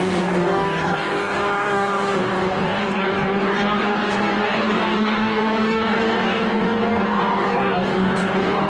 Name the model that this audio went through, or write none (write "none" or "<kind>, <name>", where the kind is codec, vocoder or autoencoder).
codec, DAC